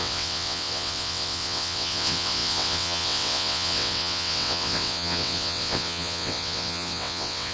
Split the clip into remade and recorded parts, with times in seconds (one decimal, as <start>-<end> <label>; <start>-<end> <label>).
0.0-7.5 remade